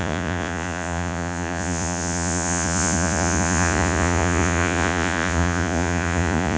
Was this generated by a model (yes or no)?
yes